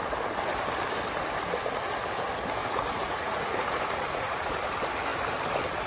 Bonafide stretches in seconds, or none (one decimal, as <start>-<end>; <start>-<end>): 0.0-2.6; 4.5-5.9